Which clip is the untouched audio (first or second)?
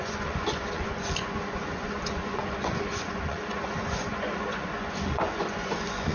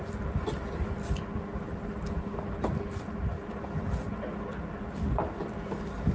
second